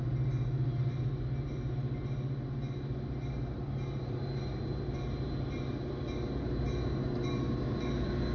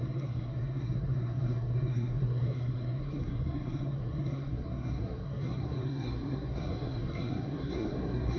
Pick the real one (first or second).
first